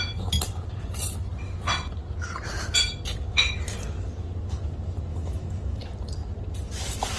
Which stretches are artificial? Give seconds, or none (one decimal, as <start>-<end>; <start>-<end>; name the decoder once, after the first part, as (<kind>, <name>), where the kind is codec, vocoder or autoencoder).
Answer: 5.1-5.8 (autoencoder, DAC-VAE)